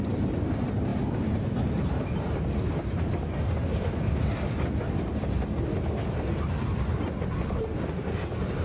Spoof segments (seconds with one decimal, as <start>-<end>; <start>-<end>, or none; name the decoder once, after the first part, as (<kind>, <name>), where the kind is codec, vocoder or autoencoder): 0.9-1.4 (vocoder, BigVGAN v2)